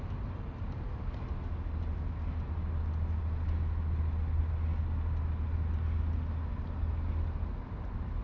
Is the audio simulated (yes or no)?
no